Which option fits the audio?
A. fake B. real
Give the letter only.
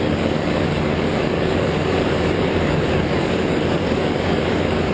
A